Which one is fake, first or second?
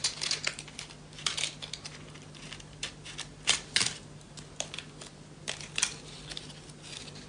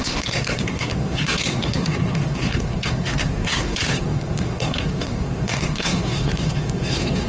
second